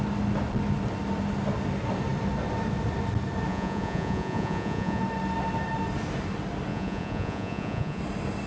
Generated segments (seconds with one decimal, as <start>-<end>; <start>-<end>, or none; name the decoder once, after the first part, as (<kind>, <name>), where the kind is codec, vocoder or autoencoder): 3.5-5.0 (vocoder, Vocos); 6.7-8.0